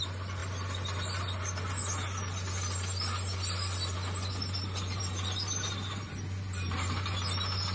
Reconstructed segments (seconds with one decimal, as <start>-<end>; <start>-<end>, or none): none